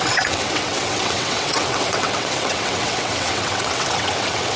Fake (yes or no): yes